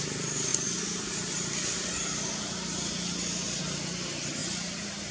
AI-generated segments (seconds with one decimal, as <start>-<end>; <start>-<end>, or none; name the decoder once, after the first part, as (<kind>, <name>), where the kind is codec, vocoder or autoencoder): none